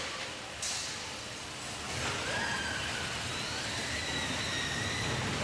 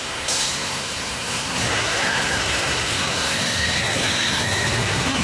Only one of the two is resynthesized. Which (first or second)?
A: second